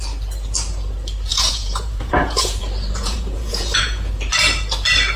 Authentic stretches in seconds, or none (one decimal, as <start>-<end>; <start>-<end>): 0.0-1.3; 2.6-3.0; 4.1-5.2